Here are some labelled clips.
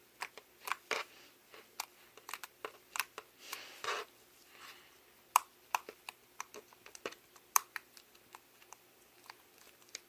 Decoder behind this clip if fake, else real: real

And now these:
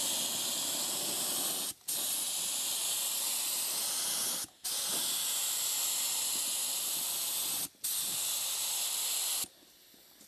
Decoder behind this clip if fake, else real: real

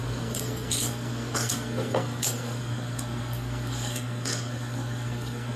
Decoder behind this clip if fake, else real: fake, codec, SNAC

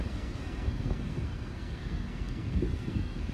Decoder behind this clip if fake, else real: fake, codec, SNAC